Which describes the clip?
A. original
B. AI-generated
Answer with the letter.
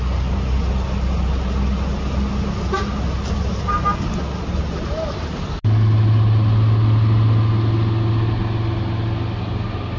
A